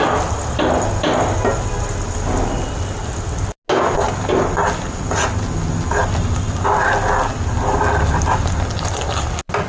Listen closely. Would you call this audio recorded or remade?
recorded